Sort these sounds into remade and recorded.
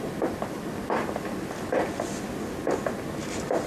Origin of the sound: recorded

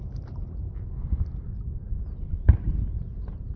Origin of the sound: remade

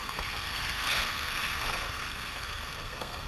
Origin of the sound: remade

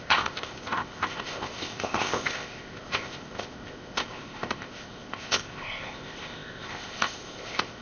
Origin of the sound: remade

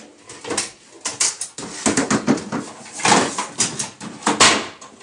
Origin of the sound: recorded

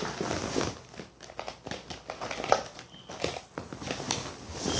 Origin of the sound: recorded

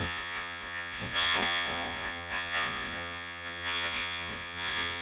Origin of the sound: remade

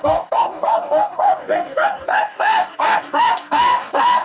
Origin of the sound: remade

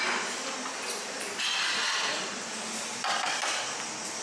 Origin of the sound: recorded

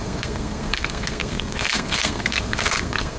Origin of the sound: remade